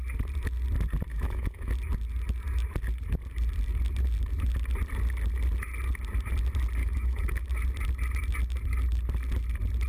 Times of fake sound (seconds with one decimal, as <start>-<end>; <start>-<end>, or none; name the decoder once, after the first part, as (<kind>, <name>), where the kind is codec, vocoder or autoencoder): 1.1-1.7 (autoencoder, DAC-VAE); 6.8-7.5